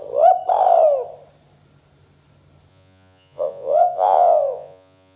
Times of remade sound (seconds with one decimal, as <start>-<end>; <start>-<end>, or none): 2.7-5.2